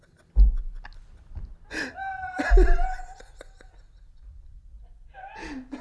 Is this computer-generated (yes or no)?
no